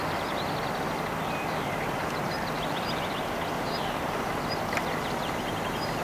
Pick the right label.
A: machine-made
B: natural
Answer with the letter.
B